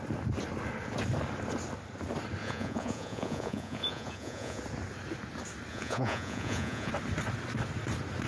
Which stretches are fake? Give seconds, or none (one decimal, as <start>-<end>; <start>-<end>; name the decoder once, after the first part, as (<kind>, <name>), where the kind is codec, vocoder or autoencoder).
2.4-4.6 (vocoder, Vocos); 5.7-6.9